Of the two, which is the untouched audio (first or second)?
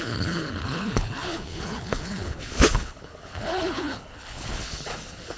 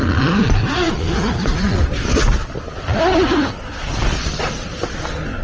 second